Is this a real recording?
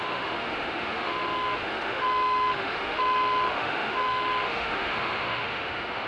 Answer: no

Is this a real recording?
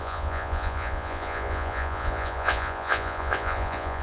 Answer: no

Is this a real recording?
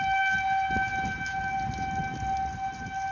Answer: yes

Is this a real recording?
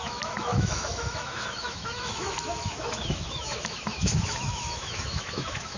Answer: no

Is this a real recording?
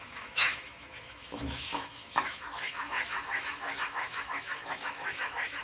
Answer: no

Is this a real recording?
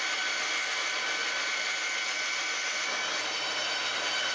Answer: yes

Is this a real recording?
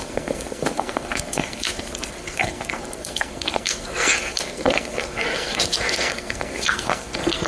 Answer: no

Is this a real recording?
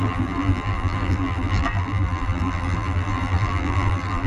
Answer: no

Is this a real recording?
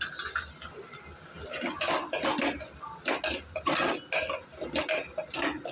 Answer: yes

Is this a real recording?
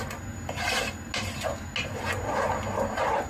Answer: yes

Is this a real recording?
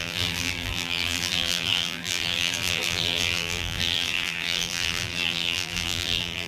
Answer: no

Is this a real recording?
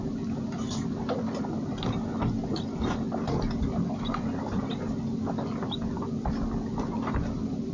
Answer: yes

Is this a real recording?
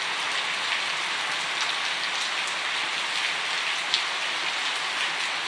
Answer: yes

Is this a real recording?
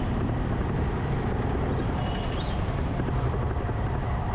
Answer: yes